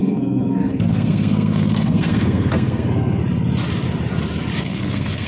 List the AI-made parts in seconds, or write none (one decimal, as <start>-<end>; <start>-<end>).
0.0-3.2; 4.6-5.3